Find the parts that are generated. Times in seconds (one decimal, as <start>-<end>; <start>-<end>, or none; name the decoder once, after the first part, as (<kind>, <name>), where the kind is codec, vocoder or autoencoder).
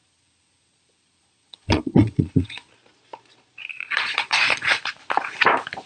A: 0.0-2.7 (vocoder, Vocos); 3.7-4.8